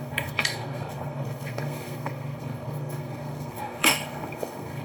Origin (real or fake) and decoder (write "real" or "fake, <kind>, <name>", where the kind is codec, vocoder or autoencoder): fake, codec, SNAC